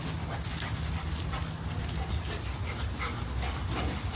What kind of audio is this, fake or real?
real